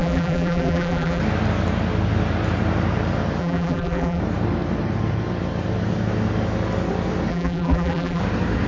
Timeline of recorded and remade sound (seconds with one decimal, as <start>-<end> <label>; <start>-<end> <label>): 0.0-1.2 remade; 1.2-3.4 recorded; 3.4-4.2 remade; 4.2-7.3 recorded; 7.3-8.2 remade; 8.2-8.7 recorded